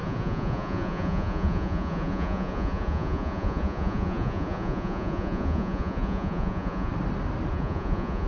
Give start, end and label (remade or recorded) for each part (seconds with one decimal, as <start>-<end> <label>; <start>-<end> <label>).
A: 0.0-6.9 remade; 6.9-7.5 recorded; 7.5-8.3 remade